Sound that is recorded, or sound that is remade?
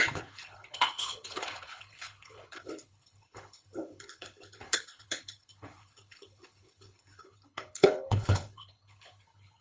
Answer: remade